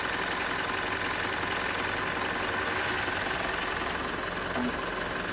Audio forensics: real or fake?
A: real